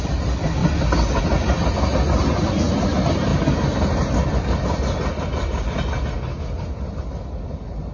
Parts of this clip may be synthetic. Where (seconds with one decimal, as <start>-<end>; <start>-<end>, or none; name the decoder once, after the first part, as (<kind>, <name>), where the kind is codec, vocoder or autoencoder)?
none